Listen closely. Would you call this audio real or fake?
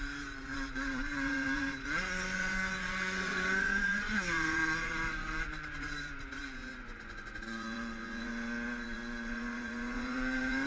fake